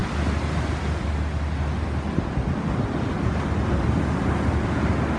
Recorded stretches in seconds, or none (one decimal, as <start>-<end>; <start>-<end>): 0.0-5.2